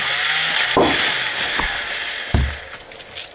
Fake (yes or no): no